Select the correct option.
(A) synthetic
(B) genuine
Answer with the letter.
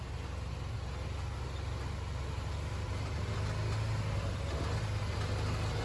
B